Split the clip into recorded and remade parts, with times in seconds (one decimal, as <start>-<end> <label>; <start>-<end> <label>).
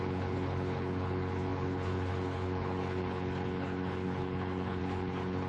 0.0-5.5 remade